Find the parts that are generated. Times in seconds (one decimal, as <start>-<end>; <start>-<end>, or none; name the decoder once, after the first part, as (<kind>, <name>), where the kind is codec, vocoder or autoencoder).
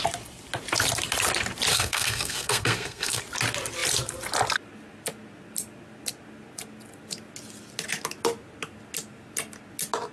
1.7-3.2 (codec, SNAC)